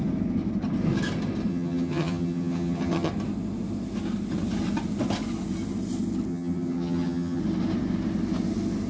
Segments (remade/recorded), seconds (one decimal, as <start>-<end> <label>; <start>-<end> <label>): 0.0-1.5 recorded; 1.5-3.1 remade; 3.1-6.3 recorded; 6.3-7.4 remade; 7.4-8.9 recorded